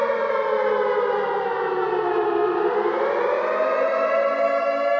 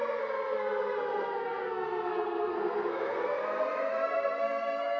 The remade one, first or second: second